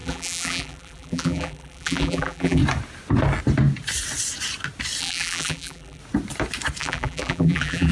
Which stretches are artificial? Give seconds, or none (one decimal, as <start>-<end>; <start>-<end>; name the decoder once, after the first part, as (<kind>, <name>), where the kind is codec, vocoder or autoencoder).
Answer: 0.0-2.6 (vocoder, BigVGAN v2); 5.0-6.0; 6.8-7.9